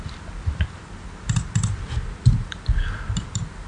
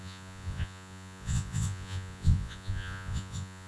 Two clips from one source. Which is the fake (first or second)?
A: second